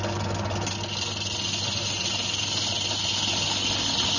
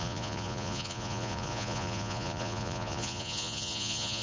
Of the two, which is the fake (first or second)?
second